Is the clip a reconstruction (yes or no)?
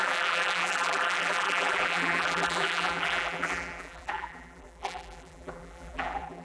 yes